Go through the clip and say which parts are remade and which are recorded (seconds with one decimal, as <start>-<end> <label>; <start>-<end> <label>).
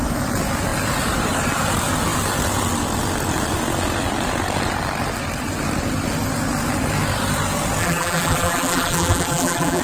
0.0-7.8 recorded; 7.8-9.8 remade